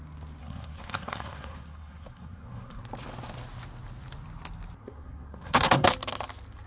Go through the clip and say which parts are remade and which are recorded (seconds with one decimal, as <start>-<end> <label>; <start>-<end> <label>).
0.0-0.4 recorded; 0.4-2.8 remade; 2.8-4.8 recorded; 4.8-5.9 remade; 5.9-6.7 recorded